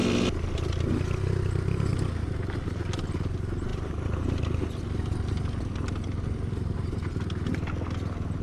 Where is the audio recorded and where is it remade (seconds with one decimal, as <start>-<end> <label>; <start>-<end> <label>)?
0.0-8.4 recorded